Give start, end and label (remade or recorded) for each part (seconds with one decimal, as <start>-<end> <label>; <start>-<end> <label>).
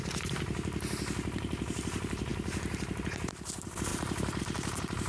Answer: 0.0-2.3 recorded; 2.3-3.0 remade; 3.0-3.9 recorded; 3.9-4.4 remade; 4.4-5.1 recorded